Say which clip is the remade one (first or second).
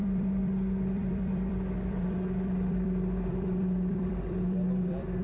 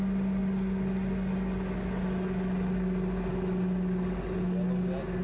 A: first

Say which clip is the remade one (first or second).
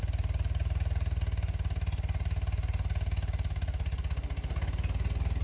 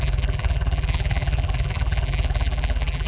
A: second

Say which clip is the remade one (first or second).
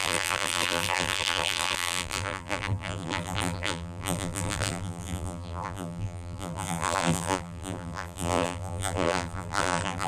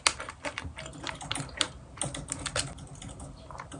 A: first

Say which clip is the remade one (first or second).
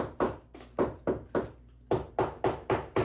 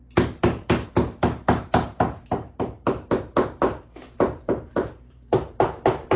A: second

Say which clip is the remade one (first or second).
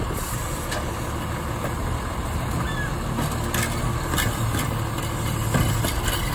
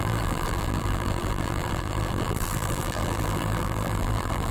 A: second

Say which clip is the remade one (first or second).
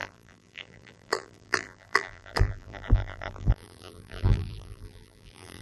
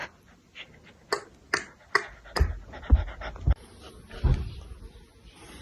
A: first